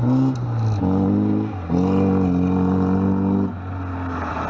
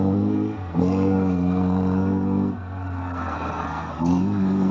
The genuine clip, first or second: first